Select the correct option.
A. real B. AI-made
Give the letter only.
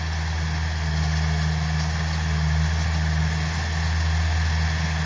A